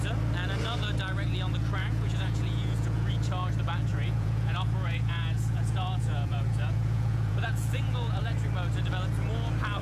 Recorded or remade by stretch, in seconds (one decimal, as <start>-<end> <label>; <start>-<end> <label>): 0.0-1.8 recorded; 1.8-3.1 remade; 3.1-3.9 recorded; 3.9-8.2 remade; 8.2-9.8 recorded